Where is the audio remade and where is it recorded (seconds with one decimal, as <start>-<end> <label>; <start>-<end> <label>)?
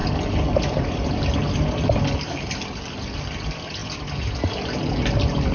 0.0-5.5 recorded